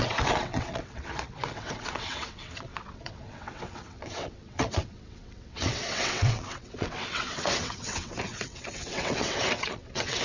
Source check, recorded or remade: remade